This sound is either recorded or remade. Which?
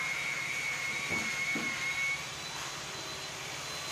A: recorded